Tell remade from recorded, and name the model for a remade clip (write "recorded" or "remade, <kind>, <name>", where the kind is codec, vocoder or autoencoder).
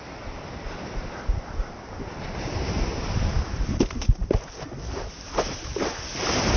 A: recorded